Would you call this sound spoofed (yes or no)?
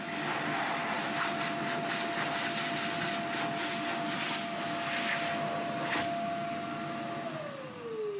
no